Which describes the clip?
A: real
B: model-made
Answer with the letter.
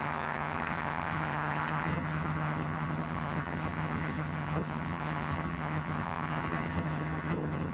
B